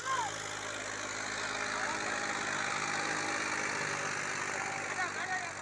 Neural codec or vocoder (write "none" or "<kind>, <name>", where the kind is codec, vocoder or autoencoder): none